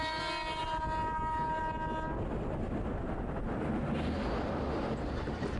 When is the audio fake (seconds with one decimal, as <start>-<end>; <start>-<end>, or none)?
0.6-1.6; 3.0-3.8